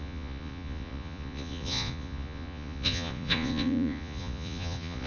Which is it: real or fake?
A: fake